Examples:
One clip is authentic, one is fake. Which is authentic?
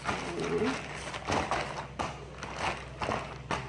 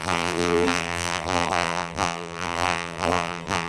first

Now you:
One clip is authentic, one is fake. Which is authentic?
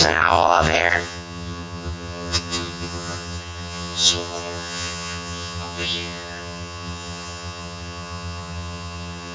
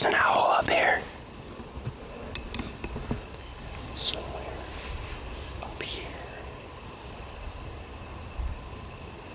second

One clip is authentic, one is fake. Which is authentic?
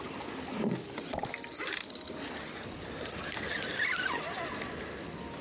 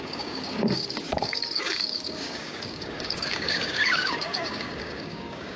first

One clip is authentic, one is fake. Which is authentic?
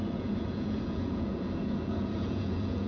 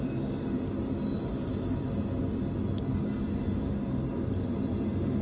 second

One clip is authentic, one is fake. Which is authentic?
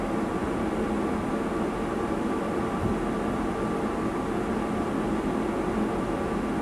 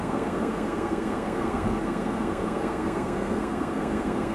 first